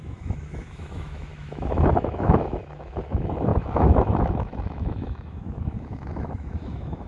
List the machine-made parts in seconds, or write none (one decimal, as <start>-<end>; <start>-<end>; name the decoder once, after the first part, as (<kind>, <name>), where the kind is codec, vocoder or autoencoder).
0.0-7.1 (autoencoder, DAC-VAE)